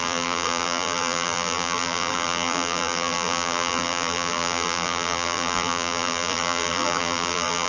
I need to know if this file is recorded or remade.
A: remade